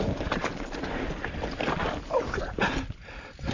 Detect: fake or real real